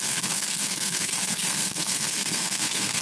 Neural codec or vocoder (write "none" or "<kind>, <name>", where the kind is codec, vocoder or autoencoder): codec, SNAC